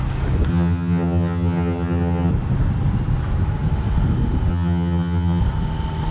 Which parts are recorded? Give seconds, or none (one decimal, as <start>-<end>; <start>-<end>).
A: 0.0-0.5; 2.3-4.5; 5.4-6.1